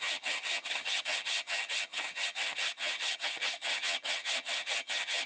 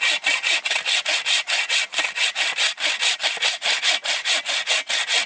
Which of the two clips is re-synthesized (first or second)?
first